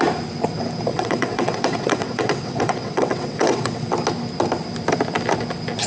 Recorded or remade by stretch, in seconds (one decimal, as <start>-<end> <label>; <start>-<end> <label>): 0.0-0.9 recorded; 0.9-3.9 remade; 3.9-5.9 recorded